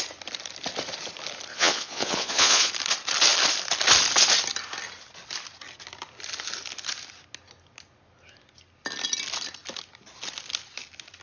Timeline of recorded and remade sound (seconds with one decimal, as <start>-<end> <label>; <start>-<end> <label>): 0.0-1.5 recorded; 1.5-2.7 remade; 2.7-11.2 recorded